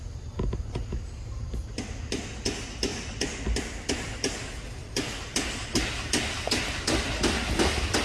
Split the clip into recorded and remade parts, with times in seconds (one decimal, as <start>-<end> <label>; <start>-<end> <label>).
0.0-8.0 recorded